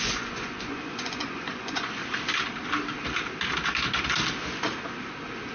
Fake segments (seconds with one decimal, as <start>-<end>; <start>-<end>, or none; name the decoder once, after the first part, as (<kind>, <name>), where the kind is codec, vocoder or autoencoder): 0.0-2.0 (vocoder, Vocos)